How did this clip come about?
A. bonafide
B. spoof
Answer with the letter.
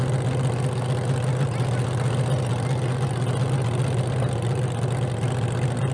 A